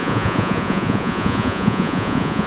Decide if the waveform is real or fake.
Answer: fake